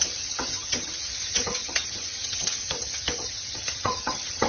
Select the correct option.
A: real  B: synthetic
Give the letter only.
B